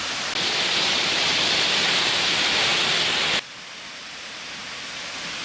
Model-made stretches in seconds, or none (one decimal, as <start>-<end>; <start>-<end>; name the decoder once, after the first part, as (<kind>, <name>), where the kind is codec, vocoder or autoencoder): none